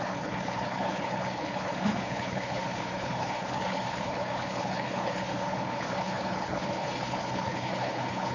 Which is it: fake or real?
fake